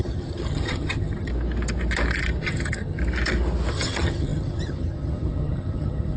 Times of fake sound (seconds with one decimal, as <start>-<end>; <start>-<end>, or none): 0.0-1.3; 2.4-3.0; 3.7-6.2

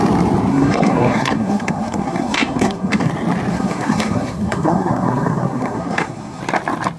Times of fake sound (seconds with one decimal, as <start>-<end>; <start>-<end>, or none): 0.5-3.1; 3.5-6.4